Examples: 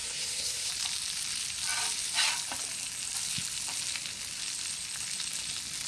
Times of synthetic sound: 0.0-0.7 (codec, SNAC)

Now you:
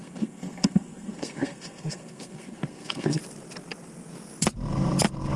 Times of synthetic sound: 0.0-3.2 (codec, SNAC)

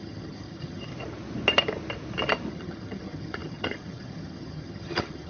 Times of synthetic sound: 0.0-0.9 (vocoder, HiFi-GAN); 2.5-5.3